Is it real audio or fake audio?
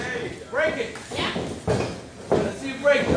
real